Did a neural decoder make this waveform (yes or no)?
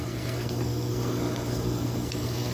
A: yes